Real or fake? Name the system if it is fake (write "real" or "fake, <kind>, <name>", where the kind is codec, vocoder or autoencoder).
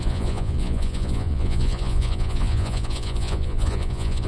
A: fake, vocoder, Vocos